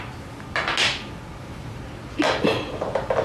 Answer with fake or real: real